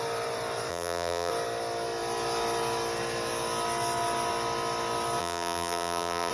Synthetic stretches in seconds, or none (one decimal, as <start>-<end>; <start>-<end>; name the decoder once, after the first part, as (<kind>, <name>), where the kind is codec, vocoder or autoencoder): 0.7-1.3 (vocoder, BigVGAN v2); 5.2-6.3